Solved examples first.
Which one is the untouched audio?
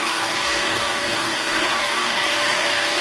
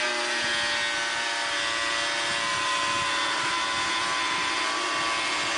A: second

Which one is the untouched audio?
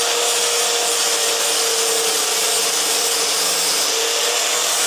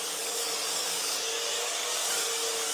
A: first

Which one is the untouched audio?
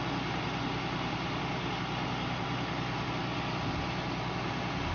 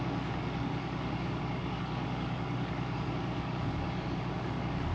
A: first